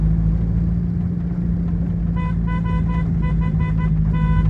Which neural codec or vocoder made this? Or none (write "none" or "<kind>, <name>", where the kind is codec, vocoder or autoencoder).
none